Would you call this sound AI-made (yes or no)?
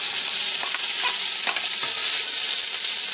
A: no